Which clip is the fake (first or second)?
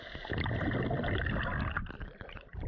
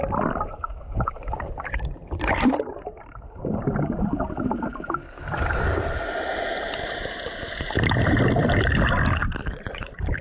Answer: second